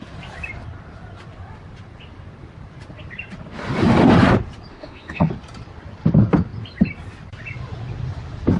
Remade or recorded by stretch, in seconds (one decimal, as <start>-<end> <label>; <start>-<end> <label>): 0.0-4.7 recorded; 4.7-5.3 remade; 5.3-8.6 recorded

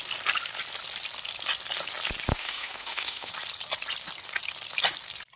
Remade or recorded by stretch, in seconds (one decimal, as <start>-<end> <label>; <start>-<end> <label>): 0.0-2.3 recorded; 2.3-3.3 remade; 3.3-5.4 recorded

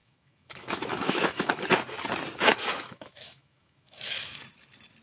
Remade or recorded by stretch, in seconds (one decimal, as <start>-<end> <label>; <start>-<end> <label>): 0.0-1.7 remade; 1.7-2.5 recorded; 2.5-4.4 remade; 4.4-5.0 recorded

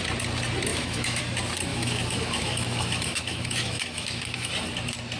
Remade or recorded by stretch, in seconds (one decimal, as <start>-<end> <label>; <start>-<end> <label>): 0.0-0.7 recorded; 0.7-1.2 remade; 1.2-1.7 recorded; 1.7-4.5 remade; 4.5-5.2 recorded

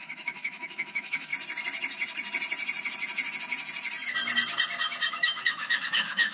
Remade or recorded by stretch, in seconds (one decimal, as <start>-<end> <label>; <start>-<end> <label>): 0.0-1.3 remade; 1.3-5.1 recorded; 5.1-6.3 remade

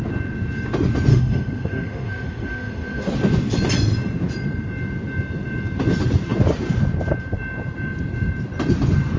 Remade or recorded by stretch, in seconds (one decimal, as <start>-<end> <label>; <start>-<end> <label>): 0.0-1.1 recorded; 1.1-3.1 remade; 3.1-9.2 recorded

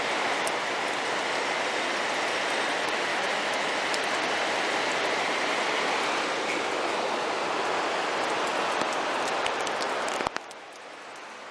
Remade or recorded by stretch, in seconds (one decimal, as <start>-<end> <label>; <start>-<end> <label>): 0.0-3.1 recorded; 3.1-3.8 remade; 3.8-11.5 recorded

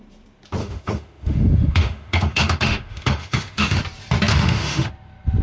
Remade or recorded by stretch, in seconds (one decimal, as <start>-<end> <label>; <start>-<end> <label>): 0.0-0.6 recorded; 0.6-3.8 remade; 3.8-4.3 recorded; 4.3-4.9 remade; 4.9-5.4 recorded